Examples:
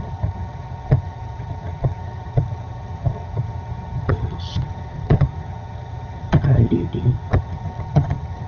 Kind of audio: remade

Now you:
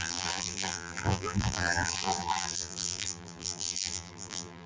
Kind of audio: remade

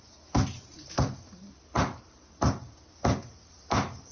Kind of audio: recorded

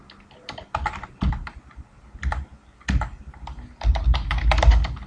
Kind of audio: recorded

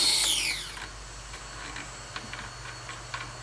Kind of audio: recorded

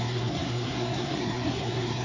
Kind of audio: remade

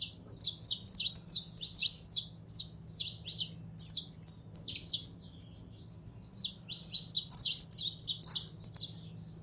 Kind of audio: recorded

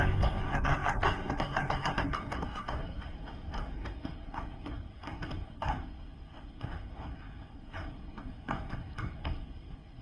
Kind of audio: remade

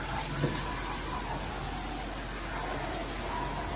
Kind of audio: recorded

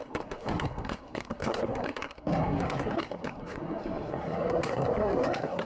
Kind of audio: remade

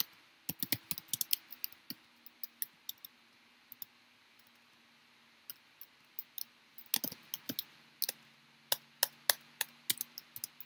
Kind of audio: recorded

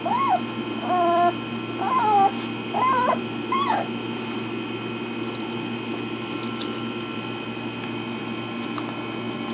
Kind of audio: recorded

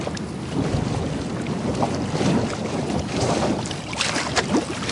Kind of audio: remade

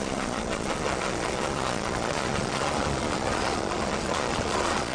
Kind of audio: remade